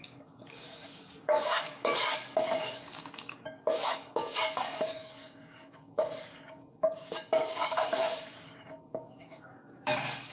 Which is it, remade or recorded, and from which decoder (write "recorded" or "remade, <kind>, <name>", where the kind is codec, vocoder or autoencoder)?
remade, codec, DAC